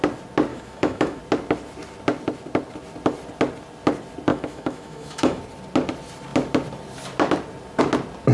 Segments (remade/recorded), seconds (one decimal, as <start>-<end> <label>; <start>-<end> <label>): 0.0-0.5 recorded; 0.5-1.2 remade; 1.2-4.3 recorded; 4.3-5.4 remade; 5.4-8.3 recorded